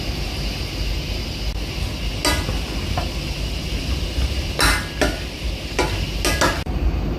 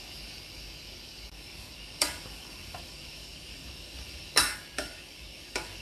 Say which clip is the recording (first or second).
first